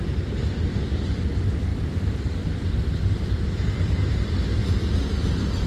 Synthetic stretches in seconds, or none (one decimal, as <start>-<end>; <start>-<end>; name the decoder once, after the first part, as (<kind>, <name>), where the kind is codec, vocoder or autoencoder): 1.7-4.4 (vocoder, BigVGAN v2)